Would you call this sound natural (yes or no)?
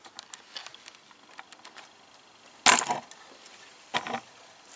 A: yes